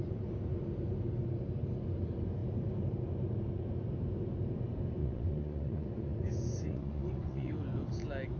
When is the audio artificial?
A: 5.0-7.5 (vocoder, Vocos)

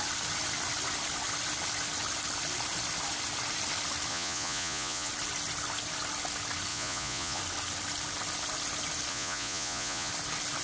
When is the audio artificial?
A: 4.1-5.1 (vocoder, Vocos); 6.7-7.4; 9.1-10.1

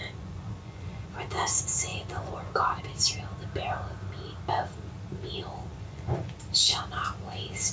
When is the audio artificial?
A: 0.0-1.1 (vocoder, Vocos); 1.9-2.8; 5.7-6.3

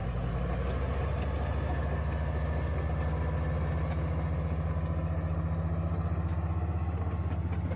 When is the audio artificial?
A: none

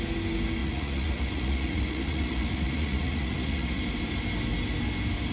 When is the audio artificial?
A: 0.6-3.8 (vocoder, Vocos)

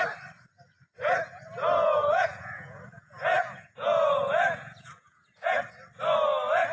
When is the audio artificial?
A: 1.6-5.6 (vocoder, Vocos)

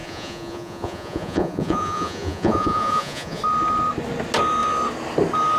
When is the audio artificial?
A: 0.0-3.4 (vocoder, Vocos)